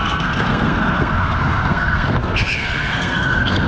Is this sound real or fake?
fake